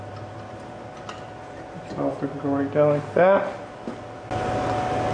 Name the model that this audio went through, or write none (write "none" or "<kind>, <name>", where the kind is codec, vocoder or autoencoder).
none